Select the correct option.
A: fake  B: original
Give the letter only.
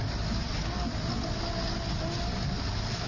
B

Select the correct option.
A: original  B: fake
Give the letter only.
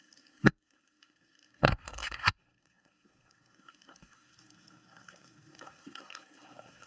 B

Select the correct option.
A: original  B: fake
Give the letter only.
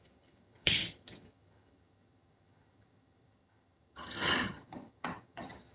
B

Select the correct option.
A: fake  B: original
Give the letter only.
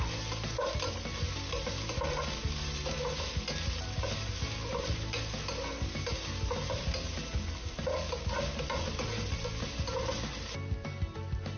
B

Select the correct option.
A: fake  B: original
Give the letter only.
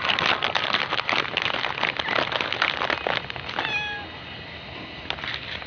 B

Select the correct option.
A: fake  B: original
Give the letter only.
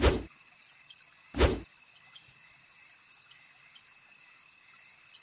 B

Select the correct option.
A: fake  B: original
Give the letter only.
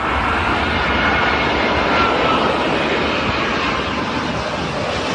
B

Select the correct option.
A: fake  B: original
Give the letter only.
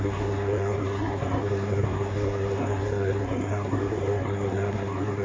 A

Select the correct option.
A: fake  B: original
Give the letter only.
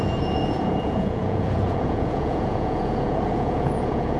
A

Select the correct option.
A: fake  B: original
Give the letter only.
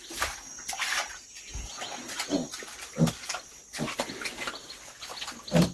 B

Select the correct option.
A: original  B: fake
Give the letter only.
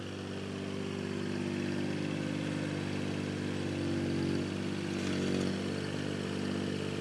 A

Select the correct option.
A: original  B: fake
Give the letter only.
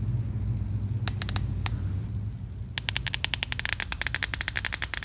A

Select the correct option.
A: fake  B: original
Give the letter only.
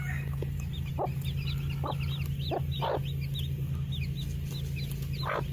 B